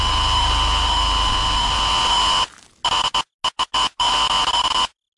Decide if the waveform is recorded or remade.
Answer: recorded